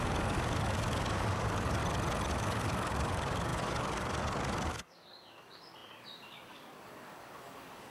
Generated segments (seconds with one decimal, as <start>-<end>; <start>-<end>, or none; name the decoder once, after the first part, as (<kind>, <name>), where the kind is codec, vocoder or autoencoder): 0.0-1.8 (codec, DAC); 2.3-7.9